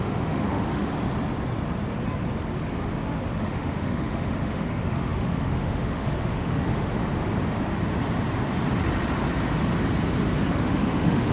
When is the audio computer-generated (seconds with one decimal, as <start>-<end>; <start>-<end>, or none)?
0.0-0.9; 3.4-7.0; 10.5-11.3

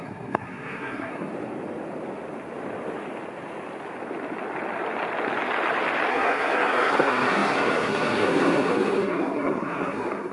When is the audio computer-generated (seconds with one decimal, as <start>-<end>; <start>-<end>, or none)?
0.0-1.3; 6.1-10.3

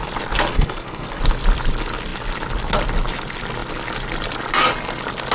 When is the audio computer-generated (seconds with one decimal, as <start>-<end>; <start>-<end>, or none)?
0.5-1.2

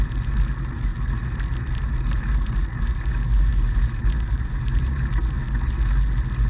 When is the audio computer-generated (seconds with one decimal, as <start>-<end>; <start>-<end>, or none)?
3.5-5.0

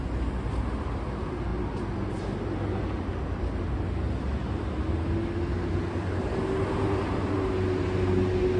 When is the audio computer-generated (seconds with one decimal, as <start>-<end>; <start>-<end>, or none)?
none

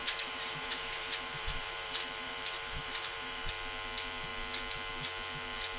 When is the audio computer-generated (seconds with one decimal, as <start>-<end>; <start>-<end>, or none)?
0.0-3.5

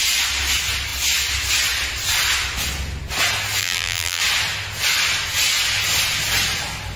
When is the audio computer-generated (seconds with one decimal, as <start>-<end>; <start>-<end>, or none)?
3.6-4.2

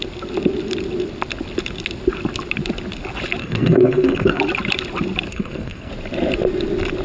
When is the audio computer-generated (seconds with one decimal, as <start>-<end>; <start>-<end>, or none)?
3.4-4.4; 5.3-5.9